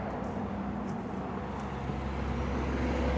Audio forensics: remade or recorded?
recorded